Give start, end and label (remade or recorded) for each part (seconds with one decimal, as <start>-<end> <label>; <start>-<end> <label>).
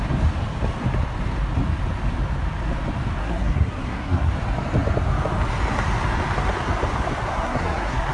0.0-3.2 recorded; 3.2-4.3 remade; 4.3-7.3 recorded; 7.3-8.1 remade